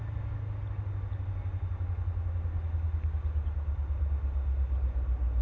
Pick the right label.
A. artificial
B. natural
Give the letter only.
B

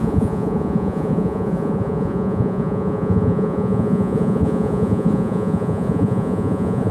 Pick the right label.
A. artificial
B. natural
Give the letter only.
A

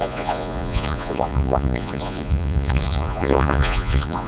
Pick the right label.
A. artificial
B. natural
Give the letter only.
A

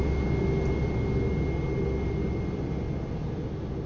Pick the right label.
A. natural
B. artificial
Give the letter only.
A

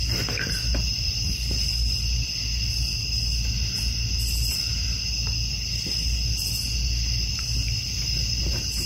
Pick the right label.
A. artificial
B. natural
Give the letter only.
B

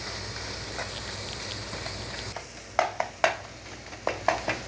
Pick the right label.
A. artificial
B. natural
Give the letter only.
B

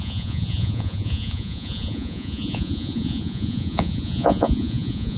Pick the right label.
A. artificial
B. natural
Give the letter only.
A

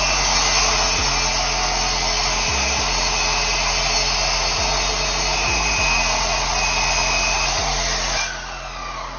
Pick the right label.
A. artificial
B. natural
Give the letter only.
B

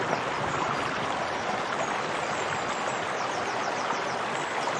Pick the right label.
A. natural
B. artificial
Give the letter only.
A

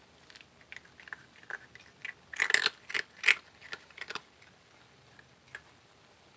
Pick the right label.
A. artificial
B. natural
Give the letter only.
B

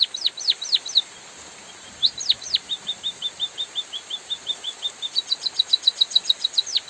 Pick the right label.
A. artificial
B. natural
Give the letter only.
B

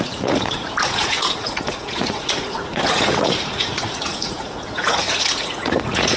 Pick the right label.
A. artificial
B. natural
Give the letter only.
A